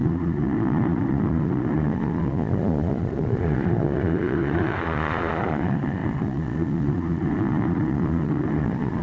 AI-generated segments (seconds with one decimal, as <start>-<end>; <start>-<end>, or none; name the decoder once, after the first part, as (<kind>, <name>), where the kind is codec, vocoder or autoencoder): 0.0-9.0 (vocoder, Vocos)